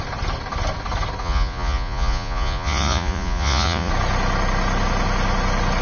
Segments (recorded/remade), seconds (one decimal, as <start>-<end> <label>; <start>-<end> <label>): 0.0-1.2 recorded; 1.2-3.9 remade; 3.9-5.8 recorded